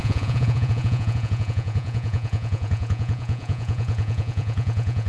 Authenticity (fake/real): fake